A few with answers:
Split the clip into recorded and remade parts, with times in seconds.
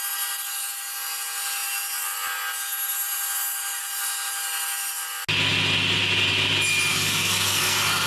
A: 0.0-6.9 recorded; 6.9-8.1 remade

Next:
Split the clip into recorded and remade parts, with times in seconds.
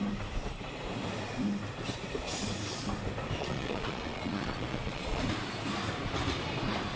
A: 0.0-3.4 recorded; 3.4-5.2 remade; 5.2-7.0 recorded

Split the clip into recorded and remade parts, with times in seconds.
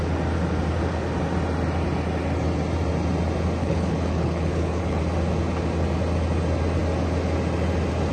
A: 0.0-3.6 recorded; 3.6-5.0 remade; 5.0-8.1 recorded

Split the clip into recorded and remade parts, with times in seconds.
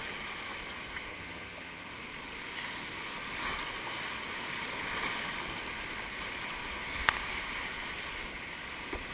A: 0.0-1.1 recorded; 1.1-1.9 remade; 1.9-9.1 recorded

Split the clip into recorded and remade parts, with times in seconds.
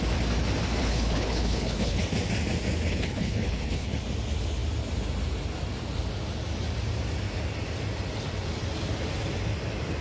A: 0.0-0.8 recorded; 0.8-2.0 remade; 2.0-2.9 recorded; 2.9-4.0 remade; 4.0-10.0 recorded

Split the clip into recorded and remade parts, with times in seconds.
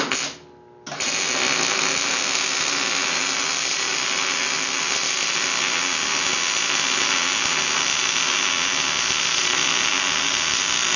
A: 0.0-11.0 recorded